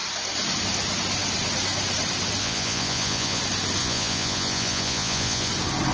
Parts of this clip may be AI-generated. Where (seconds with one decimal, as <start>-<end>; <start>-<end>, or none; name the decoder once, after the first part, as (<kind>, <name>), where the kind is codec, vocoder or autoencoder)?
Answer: 2.4-3.4 (vocoder, Vocos); 3.8-5.5